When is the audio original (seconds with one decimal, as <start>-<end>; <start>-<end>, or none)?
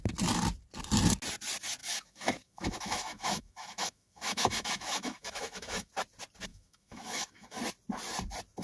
0.0-1.8; 5.9-6.5; 7.6-8.6